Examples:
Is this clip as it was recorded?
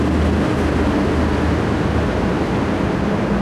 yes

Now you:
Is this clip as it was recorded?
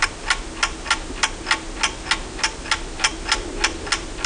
yes